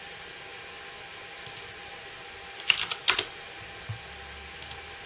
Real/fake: real